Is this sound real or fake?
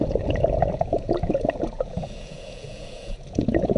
fake